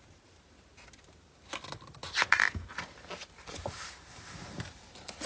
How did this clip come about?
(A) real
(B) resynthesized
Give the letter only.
A